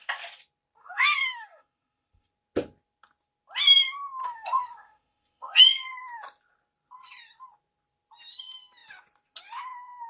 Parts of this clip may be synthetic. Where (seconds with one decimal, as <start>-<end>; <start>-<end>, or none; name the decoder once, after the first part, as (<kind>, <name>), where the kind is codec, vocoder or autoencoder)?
0.8-2.3 (codec, SNAC); 4.2-5.6